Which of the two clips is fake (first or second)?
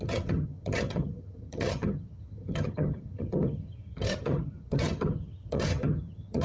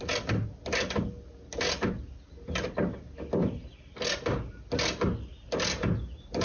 first